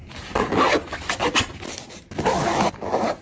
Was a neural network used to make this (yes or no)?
no